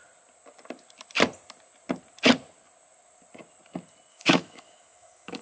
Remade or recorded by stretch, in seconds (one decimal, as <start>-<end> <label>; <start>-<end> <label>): 0.0-4.1 recorded; 4.1-5.4 remade